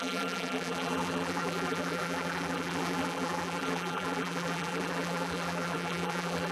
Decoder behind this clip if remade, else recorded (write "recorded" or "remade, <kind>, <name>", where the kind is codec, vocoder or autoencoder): remade, vocoder, BigVGAN v2